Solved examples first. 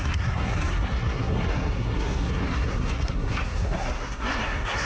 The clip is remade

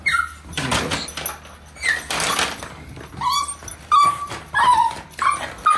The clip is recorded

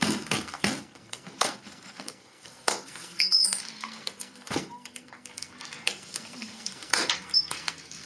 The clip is remade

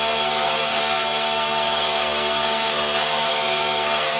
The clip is remade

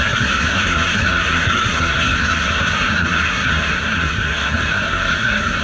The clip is remade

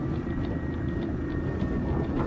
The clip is recorded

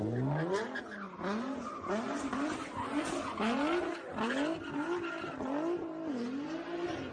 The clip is recorded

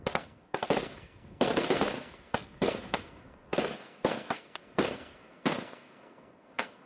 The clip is remade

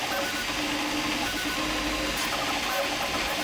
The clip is recorded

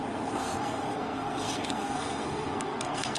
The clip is remade